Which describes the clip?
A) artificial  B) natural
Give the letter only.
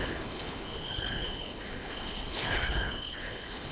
A